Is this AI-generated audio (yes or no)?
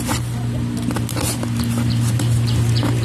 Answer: no